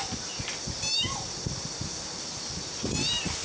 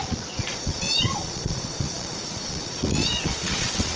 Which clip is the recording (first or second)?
first